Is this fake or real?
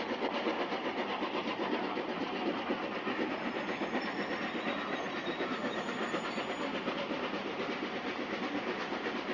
real